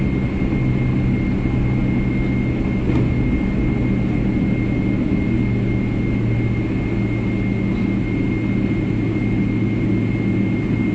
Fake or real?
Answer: real